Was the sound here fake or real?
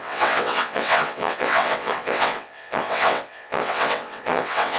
fake